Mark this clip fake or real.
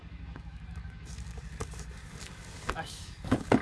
fake